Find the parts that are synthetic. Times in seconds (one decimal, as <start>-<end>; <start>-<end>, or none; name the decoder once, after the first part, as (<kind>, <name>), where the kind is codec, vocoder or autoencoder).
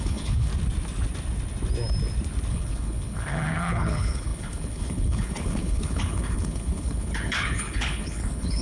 0.0-0.5 (codec, HILCodec); 2.5-8.6